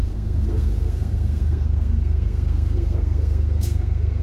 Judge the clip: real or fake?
fake